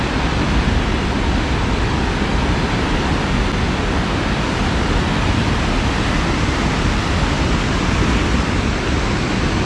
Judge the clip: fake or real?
real